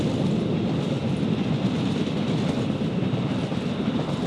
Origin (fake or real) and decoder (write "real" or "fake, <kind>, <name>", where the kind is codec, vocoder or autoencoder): real